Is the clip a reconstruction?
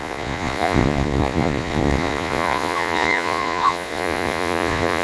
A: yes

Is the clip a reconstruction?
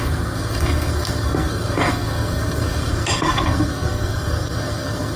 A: yes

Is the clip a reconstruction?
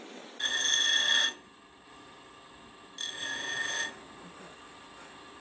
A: no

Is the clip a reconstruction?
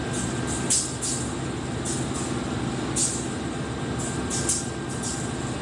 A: no